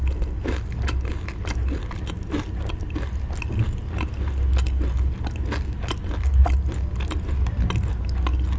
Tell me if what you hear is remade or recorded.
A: recorded